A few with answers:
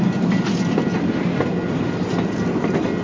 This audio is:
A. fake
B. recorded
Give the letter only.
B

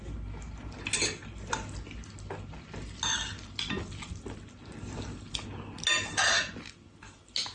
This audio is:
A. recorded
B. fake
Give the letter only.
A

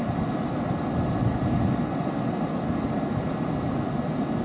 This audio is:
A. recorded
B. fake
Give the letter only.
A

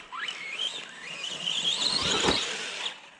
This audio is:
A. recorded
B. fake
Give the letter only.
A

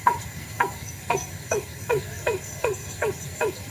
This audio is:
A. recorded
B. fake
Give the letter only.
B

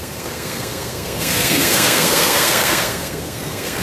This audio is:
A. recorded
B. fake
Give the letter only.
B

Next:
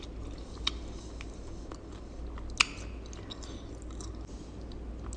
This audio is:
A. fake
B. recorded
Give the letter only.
B